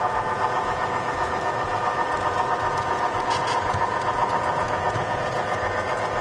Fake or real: fake